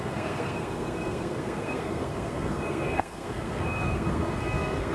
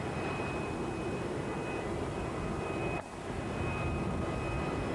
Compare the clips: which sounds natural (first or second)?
second